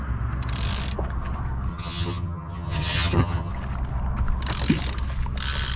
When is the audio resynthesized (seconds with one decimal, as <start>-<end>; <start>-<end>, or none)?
1.7-3.5